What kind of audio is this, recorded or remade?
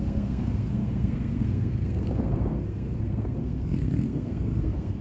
remade